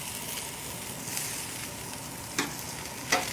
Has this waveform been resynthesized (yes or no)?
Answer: no